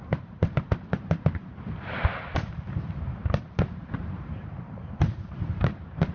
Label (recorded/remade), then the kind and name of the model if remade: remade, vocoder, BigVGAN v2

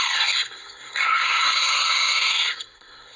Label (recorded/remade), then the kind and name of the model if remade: remade, codec, SNAC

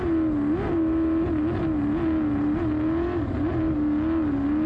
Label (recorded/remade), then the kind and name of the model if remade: recorded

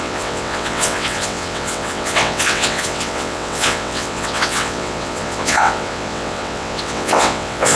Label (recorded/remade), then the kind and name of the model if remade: remade, vocoder, WaveNeXt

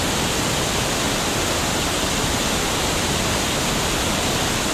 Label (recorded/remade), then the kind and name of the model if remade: recorded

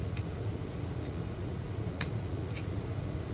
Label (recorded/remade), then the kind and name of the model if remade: remade, vocoder, Vocos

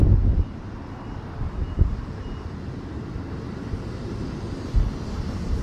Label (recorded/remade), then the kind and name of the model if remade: recorded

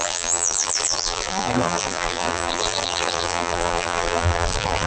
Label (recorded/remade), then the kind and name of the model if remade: remade, vocoder, BigVGAN v2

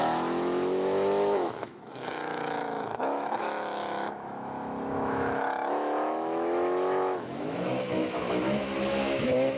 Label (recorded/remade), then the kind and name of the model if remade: remade, autoencoder, DAC-VAE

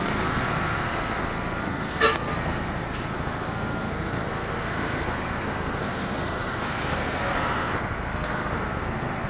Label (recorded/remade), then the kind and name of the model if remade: remade, codec, SNAC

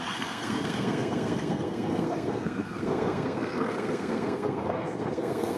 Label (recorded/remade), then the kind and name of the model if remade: remade, codec, SNAC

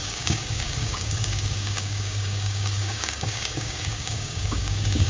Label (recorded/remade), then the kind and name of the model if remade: remade, codec, DAC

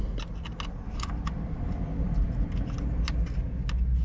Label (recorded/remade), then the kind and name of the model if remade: recorded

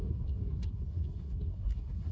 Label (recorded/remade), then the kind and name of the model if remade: remade, codec, SNAC